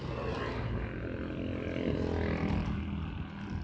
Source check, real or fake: real